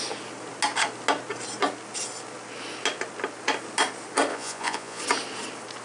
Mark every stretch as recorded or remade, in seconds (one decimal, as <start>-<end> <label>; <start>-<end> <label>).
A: 0.0-4.3 recorded; 4.3-5.0 remade; 5.0-5.8 recorded